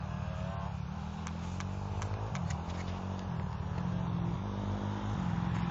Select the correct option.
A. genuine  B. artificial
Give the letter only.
A